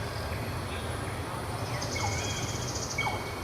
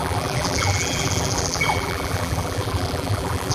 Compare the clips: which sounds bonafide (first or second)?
first